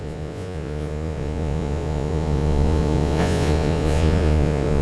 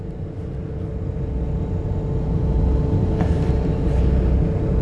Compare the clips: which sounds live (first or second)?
second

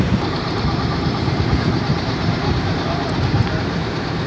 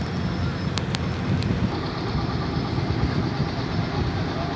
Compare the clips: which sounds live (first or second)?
second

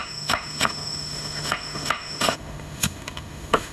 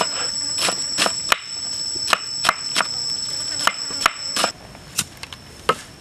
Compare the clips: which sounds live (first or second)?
second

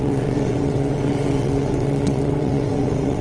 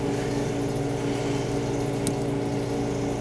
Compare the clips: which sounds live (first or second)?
second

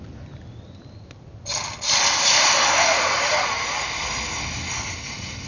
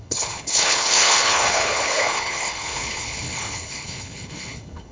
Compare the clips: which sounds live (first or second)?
first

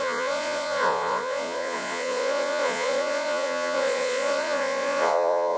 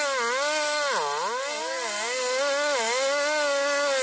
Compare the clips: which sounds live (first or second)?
second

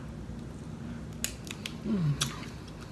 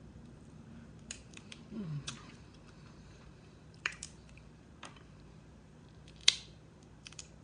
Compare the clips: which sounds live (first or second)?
first